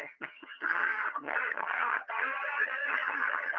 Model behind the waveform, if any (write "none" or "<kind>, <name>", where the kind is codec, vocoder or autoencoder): vocoder, HiFi-GAN